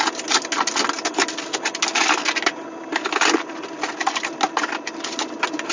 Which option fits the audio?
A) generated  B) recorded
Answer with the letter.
B